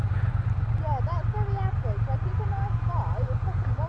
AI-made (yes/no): no